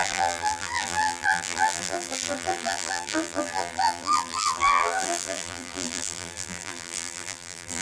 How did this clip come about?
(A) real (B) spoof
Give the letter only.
B